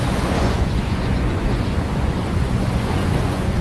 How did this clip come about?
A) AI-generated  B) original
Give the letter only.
A